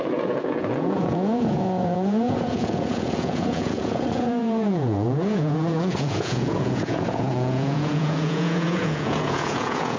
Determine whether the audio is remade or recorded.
remade